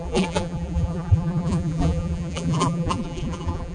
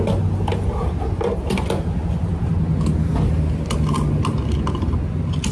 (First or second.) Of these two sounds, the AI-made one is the first